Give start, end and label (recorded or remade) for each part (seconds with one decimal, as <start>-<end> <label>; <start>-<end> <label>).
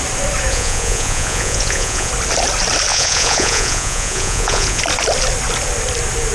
0.0-0.5 recorded; 0.5-2.1 remade; 2.1-2.9 recorded; 2.9-4.8 remade; 4.8-6.3 recorded